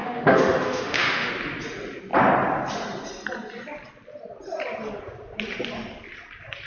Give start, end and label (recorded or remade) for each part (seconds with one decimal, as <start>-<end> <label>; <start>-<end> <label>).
0.0-1.3 remade; 1.3-6.7 recorded

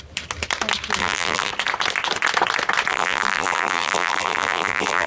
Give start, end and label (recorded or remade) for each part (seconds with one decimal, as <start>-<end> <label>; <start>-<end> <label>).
0.0-1.0 recorded; 1.0-1.5 remade; 1.5-2.9 recorded; 2.9-5.1 remade

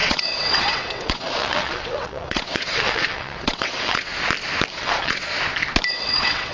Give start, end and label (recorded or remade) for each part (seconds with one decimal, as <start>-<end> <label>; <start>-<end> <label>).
0.0-4.1 remade; 4.1-4.7 recorded; 4.7-5.3 remade; 5.3-5.9 recorded; 5.9-6.5 remade

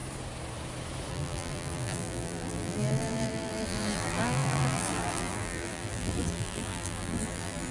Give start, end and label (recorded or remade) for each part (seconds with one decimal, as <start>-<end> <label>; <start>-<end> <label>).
0.0-1.1 recorded; 1.1-7.7 remade